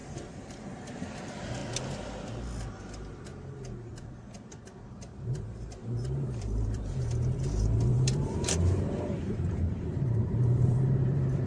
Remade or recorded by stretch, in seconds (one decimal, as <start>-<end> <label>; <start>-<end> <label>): 0.0-1.6 remade; 1.6-2.8 recorded; 2.8-3.3 remade; 3.3-4.8 recorded; 4.8-11.5 remade